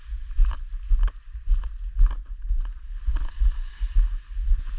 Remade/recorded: recorded